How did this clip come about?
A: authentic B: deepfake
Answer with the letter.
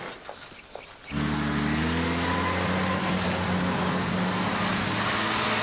A